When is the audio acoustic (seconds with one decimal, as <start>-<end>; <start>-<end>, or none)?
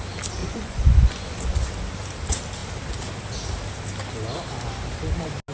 0.0-0.4; 1.7-5.5